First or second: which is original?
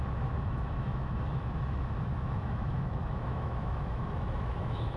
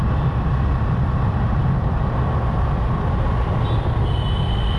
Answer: second